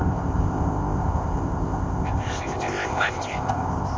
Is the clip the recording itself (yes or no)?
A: no